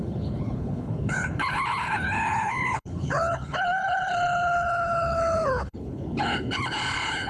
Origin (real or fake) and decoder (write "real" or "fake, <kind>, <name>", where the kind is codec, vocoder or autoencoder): fake, codec, HILCodec